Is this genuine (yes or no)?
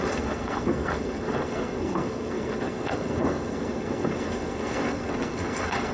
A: no